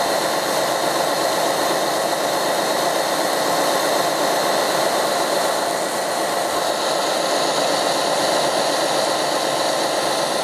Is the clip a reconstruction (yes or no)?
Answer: no